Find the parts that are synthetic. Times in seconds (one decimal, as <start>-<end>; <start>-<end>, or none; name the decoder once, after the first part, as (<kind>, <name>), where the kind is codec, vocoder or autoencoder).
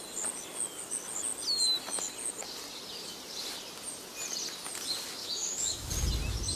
5.2-5.9 (autoencoder, DAC-VAE)